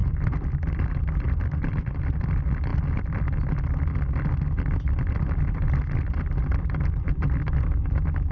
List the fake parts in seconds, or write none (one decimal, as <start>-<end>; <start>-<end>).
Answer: 0.0-1.8; 6.4-7.8